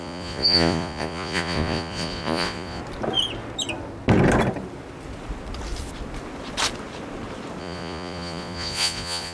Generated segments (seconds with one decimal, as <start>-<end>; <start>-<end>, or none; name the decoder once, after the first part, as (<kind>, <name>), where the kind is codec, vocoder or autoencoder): 0.0-2.8 (vocoder, Vocos); 7.6-9.3